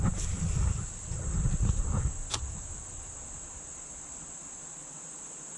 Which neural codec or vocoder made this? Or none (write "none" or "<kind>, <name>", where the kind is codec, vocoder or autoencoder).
none